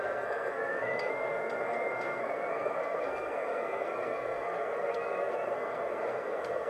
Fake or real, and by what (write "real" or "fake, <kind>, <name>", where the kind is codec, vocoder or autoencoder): fake, codec, SNAC